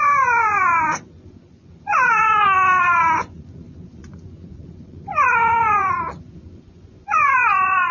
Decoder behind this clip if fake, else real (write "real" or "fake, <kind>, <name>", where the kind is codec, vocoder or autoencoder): fake, vocoder, Vocos